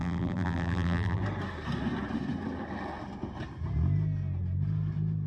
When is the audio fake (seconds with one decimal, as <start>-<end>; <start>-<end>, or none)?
0.0-1.2